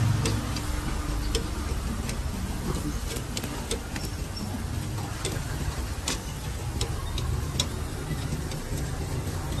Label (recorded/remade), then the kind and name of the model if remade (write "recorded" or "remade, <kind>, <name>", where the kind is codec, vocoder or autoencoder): recorded